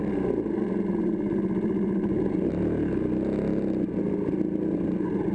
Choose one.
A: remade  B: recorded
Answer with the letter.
B